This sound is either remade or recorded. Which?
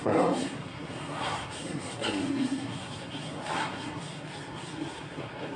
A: remade